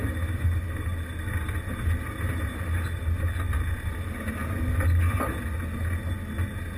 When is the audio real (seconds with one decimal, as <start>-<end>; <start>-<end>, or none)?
0.0-6.8